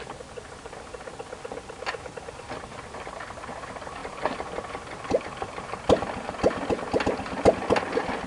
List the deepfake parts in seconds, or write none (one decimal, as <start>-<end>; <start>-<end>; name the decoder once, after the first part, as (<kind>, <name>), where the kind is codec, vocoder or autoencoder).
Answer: none